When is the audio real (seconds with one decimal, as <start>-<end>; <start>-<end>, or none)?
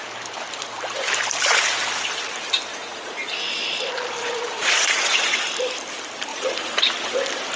0.0-2.7; 3.6-4.2; 5.5-6.3; 6.8-7.6